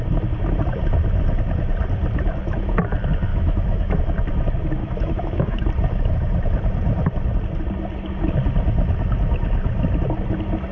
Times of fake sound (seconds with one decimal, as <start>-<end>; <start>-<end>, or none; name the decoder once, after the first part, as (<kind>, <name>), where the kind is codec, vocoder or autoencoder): 3.3-4.0 (autoencoder, DAC-VAE); 4.8-5.6